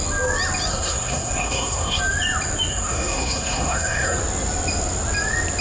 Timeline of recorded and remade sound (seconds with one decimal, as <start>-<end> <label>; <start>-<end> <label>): 0.0-0.7 recorded; 0.7-2.0 remade; 2.0-2.7 recorded; 2.7-4.2 remade; 4.2-5.6 recorded